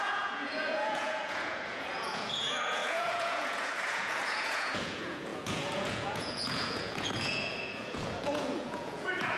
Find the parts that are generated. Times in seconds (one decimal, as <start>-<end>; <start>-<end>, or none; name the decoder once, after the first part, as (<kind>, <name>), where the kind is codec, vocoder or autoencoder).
0.0-9.4 (vocoder, Vocos)